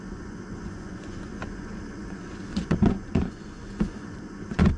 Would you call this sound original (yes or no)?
no